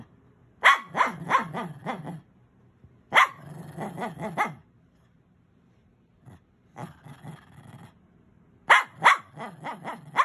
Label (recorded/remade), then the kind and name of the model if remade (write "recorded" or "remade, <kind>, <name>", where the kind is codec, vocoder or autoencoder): recorded